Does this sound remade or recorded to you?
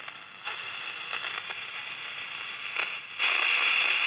recorded